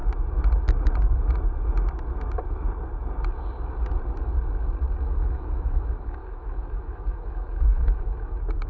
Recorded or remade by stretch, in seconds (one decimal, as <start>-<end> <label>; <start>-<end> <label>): 0.0-5.1 recorded; 5.1-8.7 remade